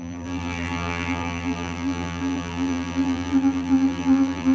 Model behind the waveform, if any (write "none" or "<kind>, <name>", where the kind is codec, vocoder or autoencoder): vocoder, BigVGAN v2